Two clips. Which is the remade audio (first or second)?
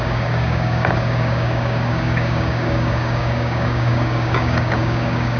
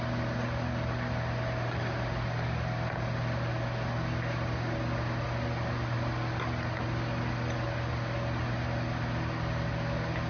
first